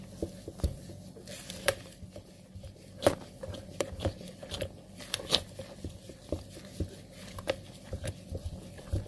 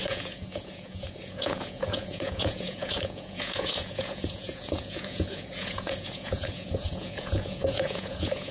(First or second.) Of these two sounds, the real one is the first